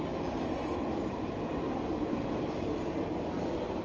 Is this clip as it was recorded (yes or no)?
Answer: yes